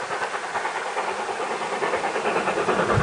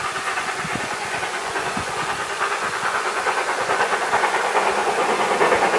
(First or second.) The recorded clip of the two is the first